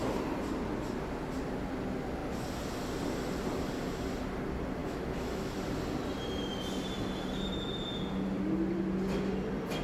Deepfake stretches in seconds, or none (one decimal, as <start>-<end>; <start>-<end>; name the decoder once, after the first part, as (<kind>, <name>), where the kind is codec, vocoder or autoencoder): 4.8-5.5 (autoencoder, DAC-VAE)